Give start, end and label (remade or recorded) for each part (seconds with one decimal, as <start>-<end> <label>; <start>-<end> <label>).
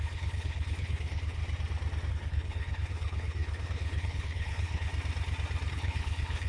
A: 0.0-1.4 remade; 1.4-2.1 recorded; 2.1-4.9 remade; 4.9-5.7 recorded; 5.7-6.5 remade